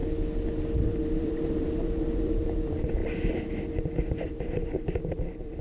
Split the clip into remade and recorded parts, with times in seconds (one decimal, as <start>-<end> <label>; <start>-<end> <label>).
0.0-0.8 recorded; 0.8-3.0 remade; 3.0-4.4 recorded; 4.4-5.6 remade